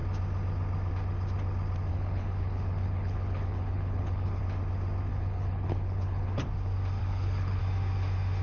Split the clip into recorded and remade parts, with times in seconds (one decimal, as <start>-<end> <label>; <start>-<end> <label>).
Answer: 0.0-1.9 recorded; 1.9-4.4 remade; 4.4-5.1 recorded; 5.1-6.4 remade; 6.4-7.0 recorded; 7.0-7.6 remade; 7.6-8.4 recorded